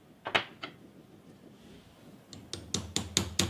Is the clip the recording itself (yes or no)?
yes